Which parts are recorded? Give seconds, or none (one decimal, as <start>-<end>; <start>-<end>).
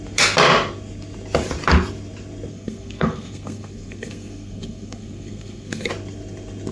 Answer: 0.0-2.5; 5.9-6.7